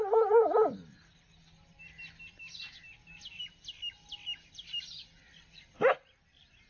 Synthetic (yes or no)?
no